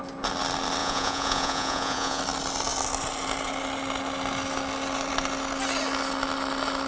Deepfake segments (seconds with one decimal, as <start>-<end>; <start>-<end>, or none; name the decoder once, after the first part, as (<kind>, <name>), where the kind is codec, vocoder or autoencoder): 0.8-2.2 (vocoder, Vocos)